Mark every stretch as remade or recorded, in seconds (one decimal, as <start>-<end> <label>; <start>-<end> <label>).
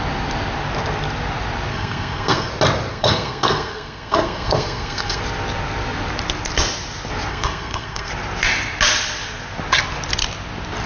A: 0.0-1.7 recorded; 1.7-2.5 remade; 2.5-2.9 recorded; 2.9-5.2 remade; 5.2-7.3 recorded; 7.3-8.1 remade; 8.1-10.9 recorded